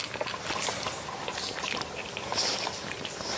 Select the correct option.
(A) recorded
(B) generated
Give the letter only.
A